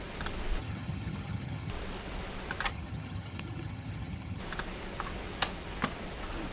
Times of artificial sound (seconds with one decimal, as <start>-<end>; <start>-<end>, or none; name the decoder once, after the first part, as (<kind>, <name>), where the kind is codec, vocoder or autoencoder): 0.6-1.7 (vocoder, HiFi-GAN); 2.7-4.4